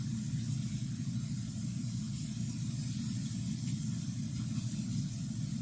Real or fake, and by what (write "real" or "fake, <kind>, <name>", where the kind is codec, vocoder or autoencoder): real